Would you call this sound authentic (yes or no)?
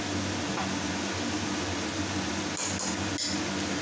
yes